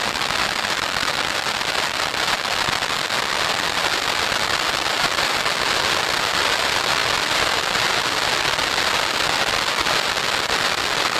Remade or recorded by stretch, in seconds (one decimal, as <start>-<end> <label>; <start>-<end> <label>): 0.0-7.0 recorded; 7.0-7.5 remade; 7.5-11.2 recorded